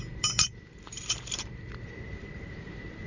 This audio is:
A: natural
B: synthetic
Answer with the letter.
B